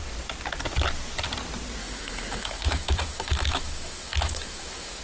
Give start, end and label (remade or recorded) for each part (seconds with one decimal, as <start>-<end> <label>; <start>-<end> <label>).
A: 0.0-1.8 recorded; 1.8-5.0 remade